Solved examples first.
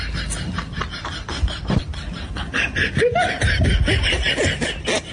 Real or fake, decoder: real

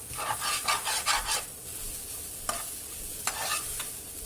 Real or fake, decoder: real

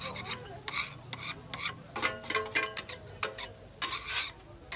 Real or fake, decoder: real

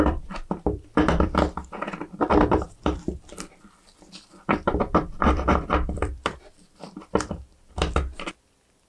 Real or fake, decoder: fake, vocoder, BigVGAN v2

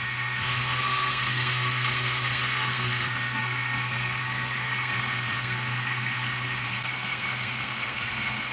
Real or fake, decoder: fake, codec, SNAC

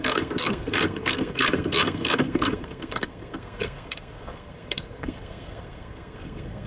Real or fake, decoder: fake, codec, SNAC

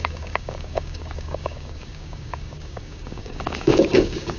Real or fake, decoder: fake, codec, DAC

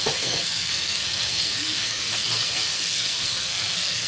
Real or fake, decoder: fake, codec, SNAC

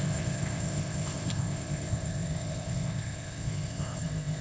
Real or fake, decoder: fake, codec, ZipCodec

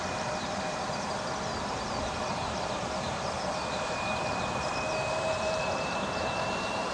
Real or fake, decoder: fake, vocoder, BigVGAN v2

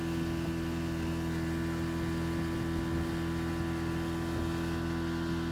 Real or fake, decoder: real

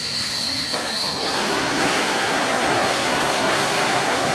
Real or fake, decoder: fake, codec, SNAC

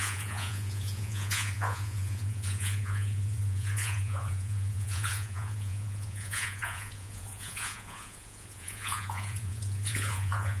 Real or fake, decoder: fake, vocoder, Vocos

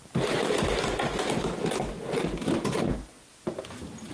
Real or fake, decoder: real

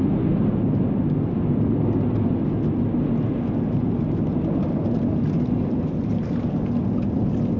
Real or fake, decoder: real